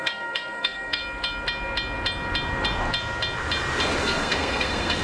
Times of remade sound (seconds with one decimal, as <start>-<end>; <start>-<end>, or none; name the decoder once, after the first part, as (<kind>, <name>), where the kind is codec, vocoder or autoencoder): 0.0-1.0 (codec, SNAC); 4.0-5.0